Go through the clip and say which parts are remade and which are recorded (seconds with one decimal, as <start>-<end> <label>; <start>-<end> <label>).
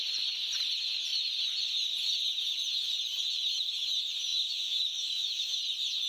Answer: 0.0-4.3 recorded; 4.3-5.6 remade; 5.6-6.1 recorded